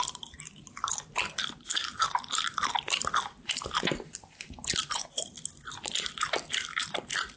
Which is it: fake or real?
real